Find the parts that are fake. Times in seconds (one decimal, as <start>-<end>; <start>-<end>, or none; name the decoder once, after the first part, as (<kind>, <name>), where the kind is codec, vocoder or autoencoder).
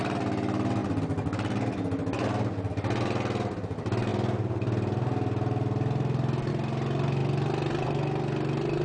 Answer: 7.2-7.7 (vocoder, BigVGAN v2)